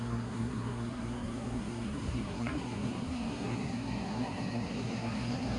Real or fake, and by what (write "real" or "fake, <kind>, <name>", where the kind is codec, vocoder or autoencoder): fake, codec, SNAC